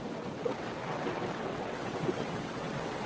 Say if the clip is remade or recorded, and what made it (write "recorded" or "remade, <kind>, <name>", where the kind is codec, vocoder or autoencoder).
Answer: remade, vocoder, WaveNeXt